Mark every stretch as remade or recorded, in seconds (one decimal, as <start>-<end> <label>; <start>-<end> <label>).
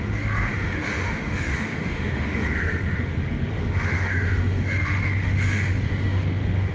0.0-6.7 remade